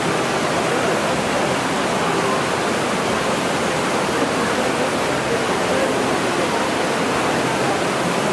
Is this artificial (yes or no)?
no